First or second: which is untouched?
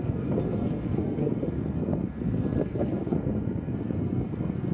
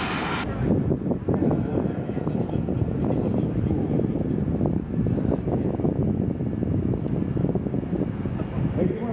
second